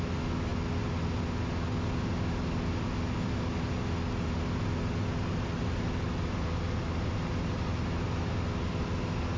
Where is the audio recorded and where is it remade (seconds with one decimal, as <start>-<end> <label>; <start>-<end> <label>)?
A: 0.0-9.4 recorded

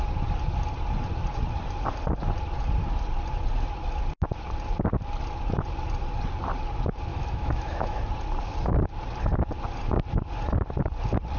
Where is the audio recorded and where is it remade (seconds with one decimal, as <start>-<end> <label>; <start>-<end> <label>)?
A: 0.0-7.1 recorded; 7.1-8.0 remade; 8.0-11.4 recorded

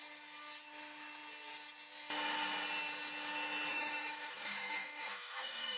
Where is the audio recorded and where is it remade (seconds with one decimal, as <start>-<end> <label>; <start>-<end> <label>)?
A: 0.0-3.7 recorded; 3.7-5.8 remade

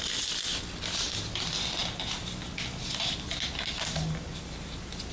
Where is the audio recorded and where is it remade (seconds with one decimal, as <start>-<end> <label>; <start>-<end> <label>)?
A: 0.0-5.1 recorded

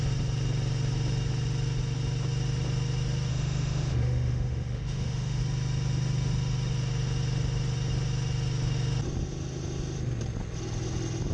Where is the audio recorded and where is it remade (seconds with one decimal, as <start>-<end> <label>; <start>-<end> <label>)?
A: 0.0-3.3 recorded; 3.3-5.4 remade; 5.4-11.3 recorded